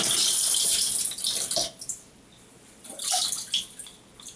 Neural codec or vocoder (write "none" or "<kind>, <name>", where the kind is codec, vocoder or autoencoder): none